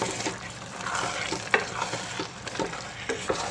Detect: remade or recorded recorded